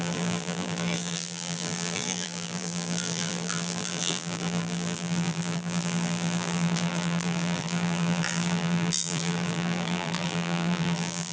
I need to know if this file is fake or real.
fake